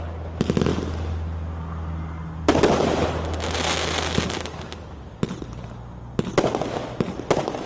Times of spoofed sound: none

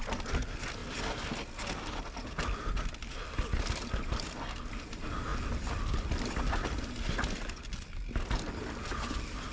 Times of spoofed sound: none